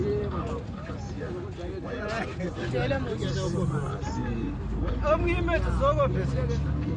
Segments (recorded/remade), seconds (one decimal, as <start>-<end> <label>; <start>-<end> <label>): 0.0-0.5 remade; 0.5-2.3 recorded; 2.3-2.9 remade; 2.9-7.0 recorded